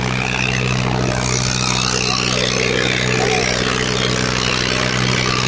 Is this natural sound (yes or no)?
yes